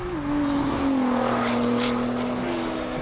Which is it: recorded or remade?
recorded